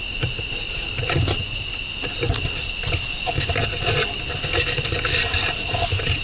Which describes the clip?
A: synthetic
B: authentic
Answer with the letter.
B